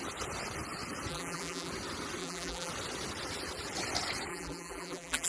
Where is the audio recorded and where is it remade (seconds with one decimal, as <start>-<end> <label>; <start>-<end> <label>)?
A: 0.0-1.1 recorded; 1.1-1.7 remade; 1.7-2.2 recorded; 2.2-2.7 remade; 2.7-4.3 recorded; 4.3-5.3 remade